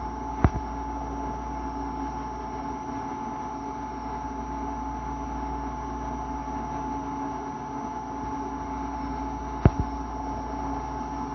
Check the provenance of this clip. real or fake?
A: real